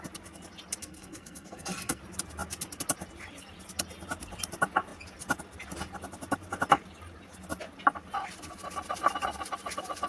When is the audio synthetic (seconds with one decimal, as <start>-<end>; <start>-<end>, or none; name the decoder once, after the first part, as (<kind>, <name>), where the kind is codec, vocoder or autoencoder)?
0.8-2.0 (codec, SNAC)